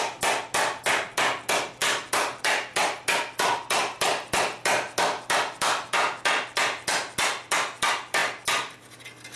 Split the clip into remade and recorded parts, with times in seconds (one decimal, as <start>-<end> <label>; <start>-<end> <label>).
0.0-9.4 recorded